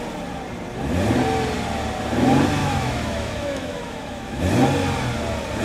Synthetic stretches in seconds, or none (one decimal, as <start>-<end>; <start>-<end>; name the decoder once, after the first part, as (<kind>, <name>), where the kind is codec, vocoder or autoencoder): 2.6-4.4 (autoencoder, DAC-VAE)